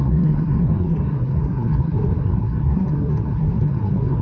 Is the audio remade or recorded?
remade